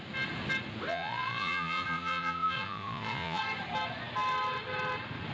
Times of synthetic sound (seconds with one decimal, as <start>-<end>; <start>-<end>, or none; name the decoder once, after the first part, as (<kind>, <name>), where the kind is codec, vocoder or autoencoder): 0.9-3.4 (vocoder, Vocos)